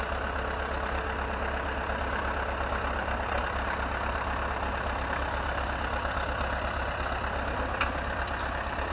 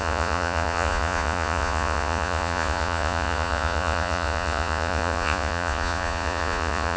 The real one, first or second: first